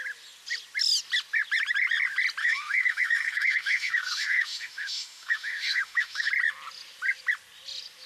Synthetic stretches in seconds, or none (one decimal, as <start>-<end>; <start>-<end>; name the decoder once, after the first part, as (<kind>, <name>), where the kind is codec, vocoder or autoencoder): 2.4-6.3 (autoencoder, DAC-VAE)